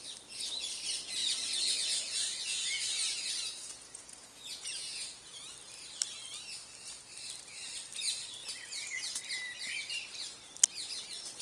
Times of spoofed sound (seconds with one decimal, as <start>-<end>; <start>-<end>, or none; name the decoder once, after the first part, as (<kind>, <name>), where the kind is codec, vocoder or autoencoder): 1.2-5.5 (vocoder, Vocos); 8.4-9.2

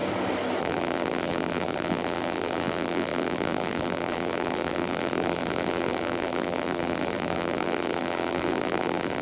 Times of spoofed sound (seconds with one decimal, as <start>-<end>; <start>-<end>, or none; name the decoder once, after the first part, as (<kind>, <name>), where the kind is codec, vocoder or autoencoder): 0.6-9.2 (vocoder, BigVGAN v2)

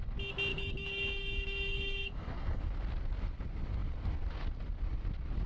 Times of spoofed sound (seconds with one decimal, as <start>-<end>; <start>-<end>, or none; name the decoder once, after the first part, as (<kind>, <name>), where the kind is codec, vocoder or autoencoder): 0.5-2.6 (codec, DAC)

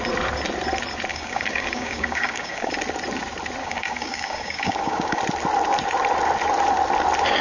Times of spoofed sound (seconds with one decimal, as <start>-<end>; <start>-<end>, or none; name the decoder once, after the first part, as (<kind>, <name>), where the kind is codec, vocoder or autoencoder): 1.1-2.7 (codec, DAC); 3.6-5.2